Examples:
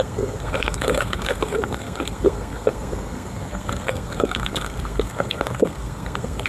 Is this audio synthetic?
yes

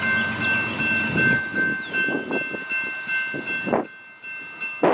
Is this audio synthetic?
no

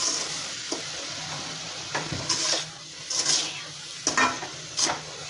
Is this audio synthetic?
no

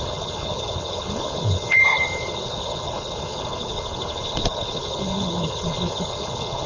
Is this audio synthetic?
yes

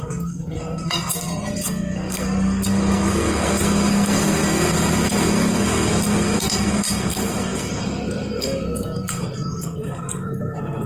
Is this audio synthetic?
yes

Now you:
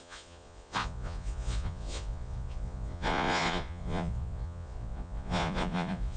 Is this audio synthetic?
yes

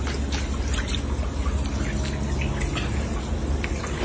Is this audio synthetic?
no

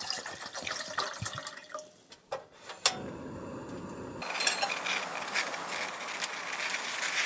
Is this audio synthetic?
no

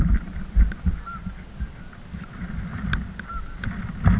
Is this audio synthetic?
no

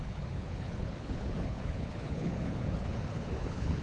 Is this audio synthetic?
yes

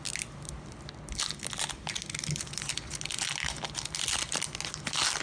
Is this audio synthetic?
no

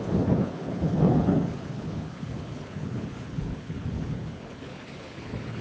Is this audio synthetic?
yes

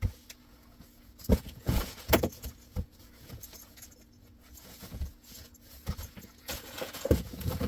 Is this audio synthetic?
yes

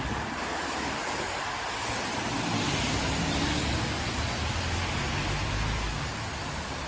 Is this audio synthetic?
no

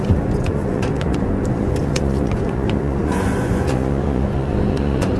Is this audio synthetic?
yes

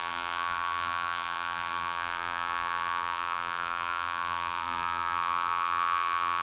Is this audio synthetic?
yes